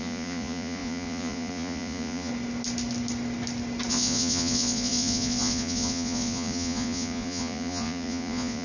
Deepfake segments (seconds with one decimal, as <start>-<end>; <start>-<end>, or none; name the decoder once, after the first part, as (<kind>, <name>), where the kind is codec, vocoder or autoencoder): 0.0-2.3 (vocoder, Vocos); 3.9-8.6